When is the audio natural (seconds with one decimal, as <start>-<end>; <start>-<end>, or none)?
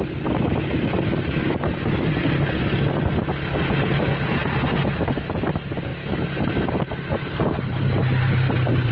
0.0-4.4; 5.1-8.9